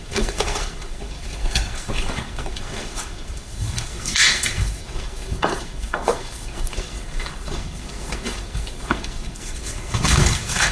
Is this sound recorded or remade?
remade